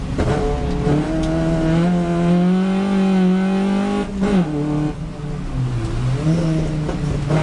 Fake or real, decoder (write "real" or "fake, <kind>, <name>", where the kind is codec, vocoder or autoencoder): real